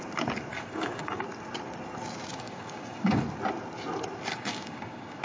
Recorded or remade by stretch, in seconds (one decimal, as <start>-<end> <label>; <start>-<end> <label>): 0.0-0.5 recorded; 0.5-1.2 remade; 1.2-2.3 recorded; 2.3-3.2 remade; 3.2-4.3 recorded; 4.3-5.2 remade